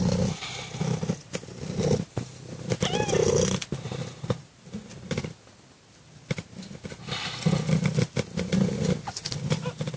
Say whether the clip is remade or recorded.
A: recorded